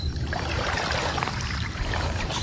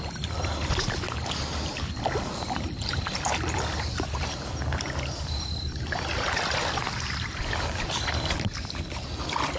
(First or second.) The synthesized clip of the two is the first